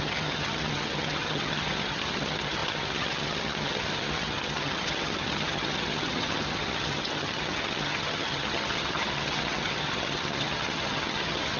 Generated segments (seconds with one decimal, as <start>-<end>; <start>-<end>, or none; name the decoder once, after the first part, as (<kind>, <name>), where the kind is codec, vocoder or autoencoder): 0.0-11.6 (vocoder, HiFi-GAN)